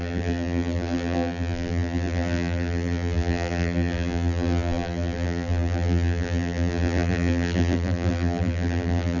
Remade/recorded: remade